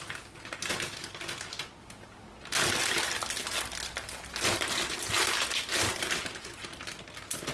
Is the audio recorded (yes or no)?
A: yes